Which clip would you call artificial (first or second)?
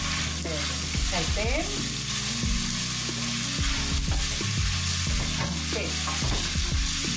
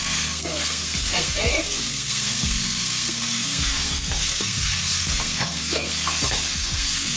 second